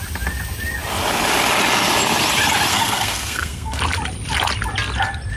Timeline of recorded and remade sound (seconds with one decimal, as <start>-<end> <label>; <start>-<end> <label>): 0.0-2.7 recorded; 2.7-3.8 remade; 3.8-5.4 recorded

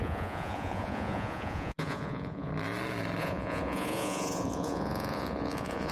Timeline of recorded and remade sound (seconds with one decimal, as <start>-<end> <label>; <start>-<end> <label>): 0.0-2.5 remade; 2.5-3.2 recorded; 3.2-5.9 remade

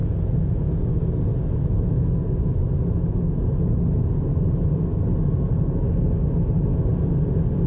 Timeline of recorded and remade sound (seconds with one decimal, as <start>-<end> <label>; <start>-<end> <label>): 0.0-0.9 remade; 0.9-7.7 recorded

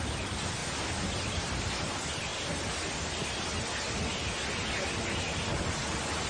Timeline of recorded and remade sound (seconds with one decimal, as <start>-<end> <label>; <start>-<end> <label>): 0.0-6.3 recorded

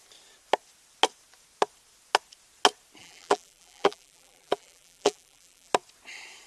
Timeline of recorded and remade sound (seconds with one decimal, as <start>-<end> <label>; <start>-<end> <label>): 0.0-3.0 recorded; 3.0-5.7 remade; 5.7-6.5 recorded

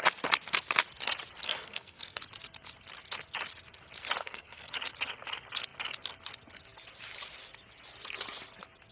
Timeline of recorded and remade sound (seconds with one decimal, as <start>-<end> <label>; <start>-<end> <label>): 0.0-1.4 recorded; 1.4-2.2 remade; 2.2-4.2 recorded; 4.2-4.7 remade; 4.7-8.9 recorded